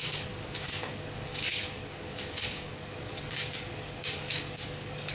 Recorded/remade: remade